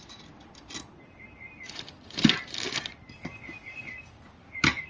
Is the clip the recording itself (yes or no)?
yes